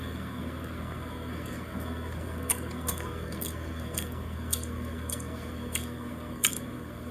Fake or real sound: fake